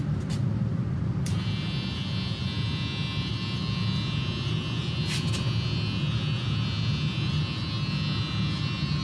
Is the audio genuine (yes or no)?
yes